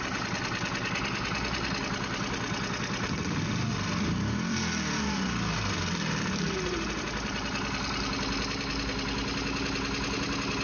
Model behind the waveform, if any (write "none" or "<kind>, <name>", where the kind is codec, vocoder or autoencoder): none